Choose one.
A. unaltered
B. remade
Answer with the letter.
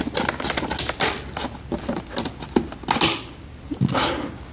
A